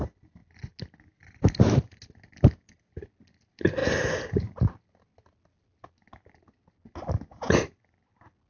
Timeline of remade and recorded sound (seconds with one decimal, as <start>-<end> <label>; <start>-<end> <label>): 0.0-8.5 recorded